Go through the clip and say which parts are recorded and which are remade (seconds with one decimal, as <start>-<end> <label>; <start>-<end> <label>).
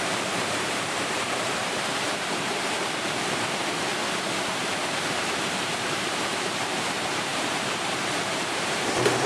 0.0-3.9 remade; 3.9-5.1 recorded; 5.1-9.3 remade